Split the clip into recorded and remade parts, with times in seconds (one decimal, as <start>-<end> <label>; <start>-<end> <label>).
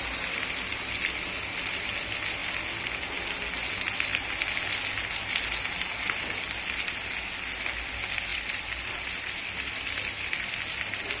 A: 0.0-8.3 recorded; 8.3-9.4 remade; 9.4-11.2 recorded